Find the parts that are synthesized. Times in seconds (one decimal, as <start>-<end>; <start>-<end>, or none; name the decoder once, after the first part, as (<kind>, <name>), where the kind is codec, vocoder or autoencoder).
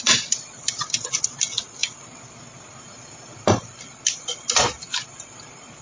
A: none